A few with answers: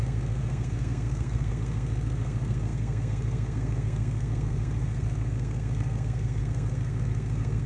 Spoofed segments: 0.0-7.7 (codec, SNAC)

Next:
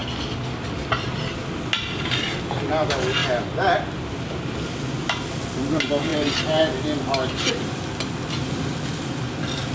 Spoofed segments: none

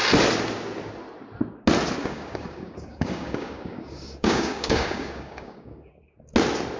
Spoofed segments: 2.0-6.0 (codec, DAC)